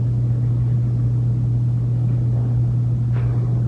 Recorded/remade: recorded